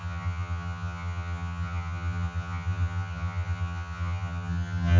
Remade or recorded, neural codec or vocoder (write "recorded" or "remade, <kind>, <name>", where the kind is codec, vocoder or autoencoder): remade, vocoder, HiFi-GAN